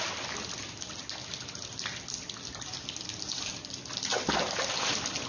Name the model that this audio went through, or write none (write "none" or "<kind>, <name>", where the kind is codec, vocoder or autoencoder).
none